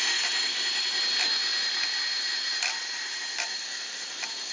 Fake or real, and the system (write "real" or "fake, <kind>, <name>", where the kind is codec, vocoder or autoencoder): fake, vocoder, BigVGAN v2